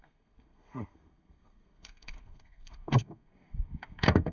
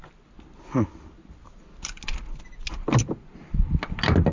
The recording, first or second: second